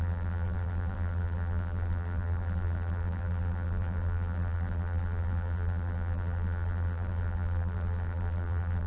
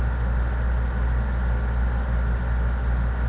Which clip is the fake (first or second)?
first